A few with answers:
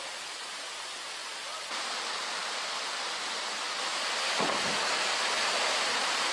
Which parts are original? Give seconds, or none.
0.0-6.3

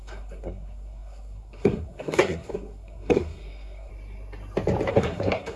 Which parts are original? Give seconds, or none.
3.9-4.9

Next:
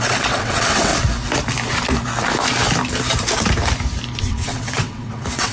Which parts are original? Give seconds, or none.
0.9-4.2

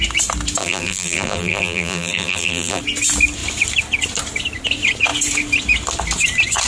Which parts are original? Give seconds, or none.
0.0-0.6; 2.8-6.7

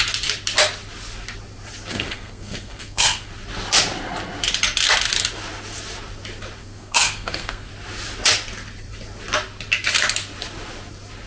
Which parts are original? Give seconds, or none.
0.0-1.9; 3.3-6.6; 7.7-11.3

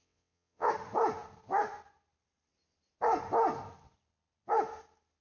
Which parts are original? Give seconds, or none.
0.7-5.2

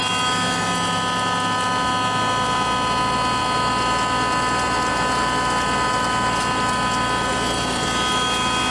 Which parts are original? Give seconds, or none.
0.0-8.7